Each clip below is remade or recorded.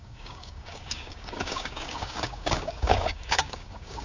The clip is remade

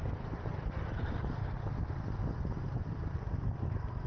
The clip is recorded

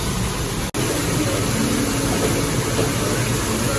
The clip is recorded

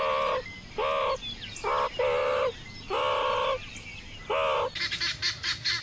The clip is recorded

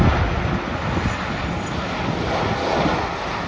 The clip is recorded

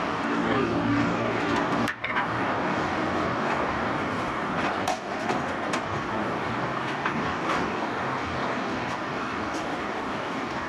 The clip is remade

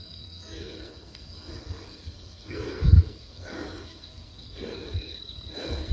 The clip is remade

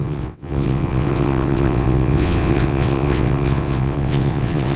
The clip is remade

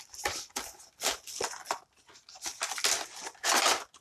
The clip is recorded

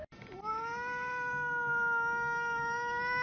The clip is recorded